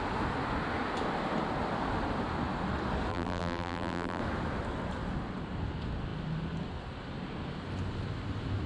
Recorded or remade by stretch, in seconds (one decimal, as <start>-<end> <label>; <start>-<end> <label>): 0.0-3.1 recorded; 3.1-4.2 remade; 4.2-8.7 recorded